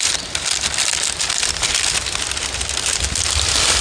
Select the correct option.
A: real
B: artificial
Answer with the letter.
A